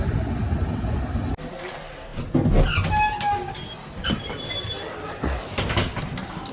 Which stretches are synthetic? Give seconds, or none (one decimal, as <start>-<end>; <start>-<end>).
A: none